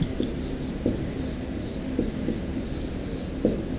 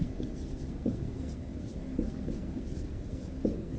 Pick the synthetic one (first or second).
second